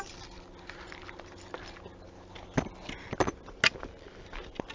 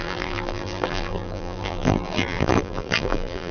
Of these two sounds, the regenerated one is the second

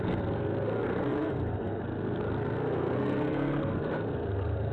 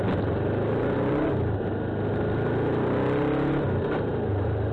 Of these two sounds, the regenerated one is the first